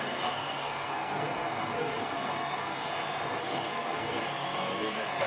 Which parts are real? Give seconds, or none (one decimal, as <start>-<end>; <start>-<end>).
2.8-3.4